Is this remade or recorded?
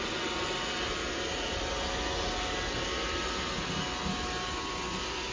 recorded